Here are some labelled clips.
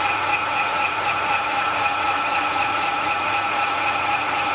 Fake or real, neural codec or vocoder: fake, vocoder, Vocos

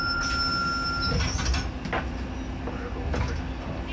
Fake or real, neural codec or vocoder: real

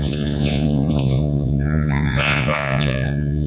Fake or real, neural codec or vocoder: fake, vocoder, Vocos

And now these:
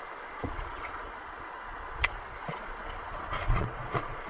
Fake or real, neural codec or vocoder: fake, vocoder, Vocos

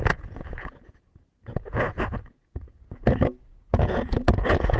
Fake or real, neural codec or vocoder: fake, vocoder, Vocos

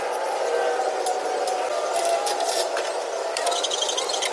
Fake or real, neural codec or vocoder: real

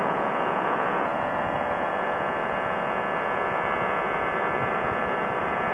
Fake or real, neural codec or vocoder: fake, vocoder, Vocos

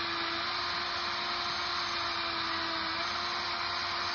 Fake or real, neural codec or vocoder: real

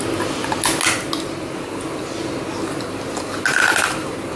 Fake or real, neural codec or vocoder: real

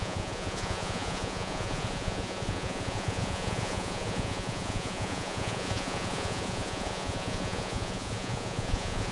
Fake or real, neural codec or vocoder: fake, vocoder, Vocos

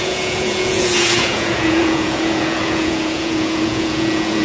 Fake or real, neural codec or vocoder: fake, vocoder, Vocos